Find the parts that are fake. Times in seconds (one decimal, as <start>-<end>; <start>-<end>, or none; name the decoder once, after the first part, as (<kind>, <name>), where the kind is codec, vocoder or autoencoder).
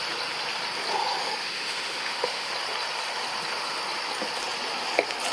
1.2-2.5 (autoencoder, DAC-VAE)